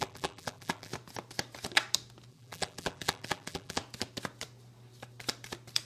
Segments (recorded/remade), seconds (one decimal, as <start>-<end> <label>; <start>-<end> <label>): 0.0-0.9 remade; 0.9-2.3 recorded; 2.3-3.8 remade; 3.8-5.9 recorded